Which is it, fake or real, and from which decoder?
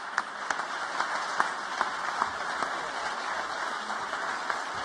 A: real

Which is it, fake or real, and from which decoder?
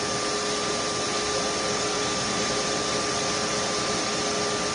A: real